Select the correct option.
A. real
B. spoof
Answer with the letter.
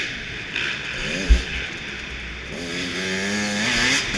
A